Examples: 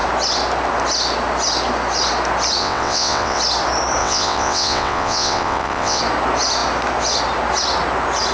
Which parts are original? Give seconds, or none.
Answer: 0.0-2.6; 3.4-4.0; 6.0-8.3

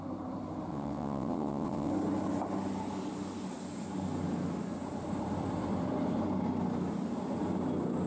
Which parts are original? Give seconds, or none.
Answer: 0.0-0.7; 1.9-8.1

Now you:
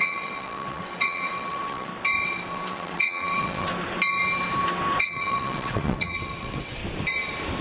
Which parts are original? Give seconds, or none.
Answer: 1.9-2.5; 3.7-5.0; 6.8-7.6